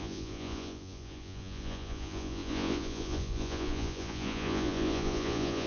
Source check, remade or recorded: remade